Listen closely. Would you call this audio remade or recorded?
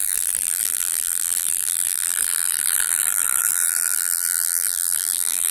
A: remade